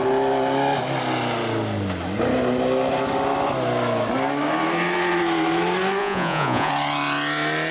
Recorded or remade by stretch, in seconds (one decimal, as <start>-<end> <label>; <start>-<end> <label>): 0.0-6.0 recorded; 6.0-6.7 remade; 6.7-7.7 recorded